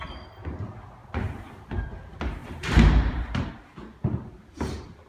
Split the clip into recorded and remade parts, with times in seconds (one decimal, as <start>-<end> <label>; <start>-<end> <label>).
0.0-2.4 recorded; 2.4-3.5 remade; 3.5-5.1 recorded